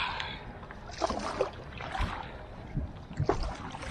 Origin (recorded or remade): recorded